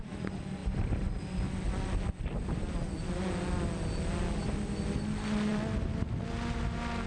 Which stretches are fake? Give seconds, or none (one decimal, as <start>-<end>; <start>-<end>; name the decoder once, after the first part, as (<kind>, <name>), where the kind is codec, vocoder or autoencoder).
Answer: none